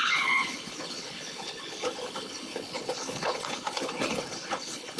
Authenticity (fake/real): fake